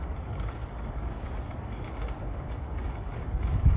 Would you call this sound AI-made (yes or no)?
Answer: yes